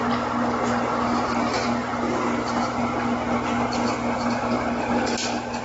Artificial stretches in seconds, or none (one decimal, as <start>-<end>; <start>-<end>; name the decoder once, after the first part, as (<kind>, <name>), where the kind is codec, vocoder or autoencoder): none